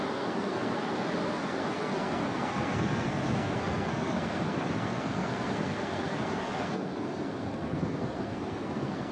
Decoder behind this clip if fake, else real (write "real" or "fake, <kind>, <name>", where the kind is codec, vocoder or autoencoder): fake, codec, SNAC